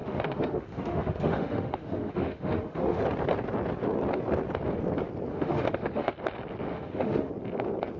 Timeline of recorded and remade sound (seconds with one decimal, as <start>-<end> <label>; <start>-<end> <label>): 0.0-3.0 remade; 3.0-5.3 recorded; 5.3-6.1 remade; 6.1-6.7 recorded; 6.7-7.3 remade; 7.3-8.0 recorded